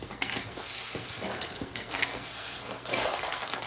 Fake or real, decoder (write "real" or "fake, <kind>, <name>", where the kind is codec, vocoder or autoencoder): fake, codec, SNAC